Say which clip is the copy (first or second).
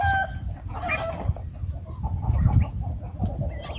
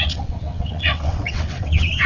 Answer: second